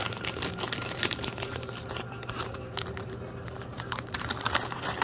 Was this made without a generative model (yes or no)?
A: no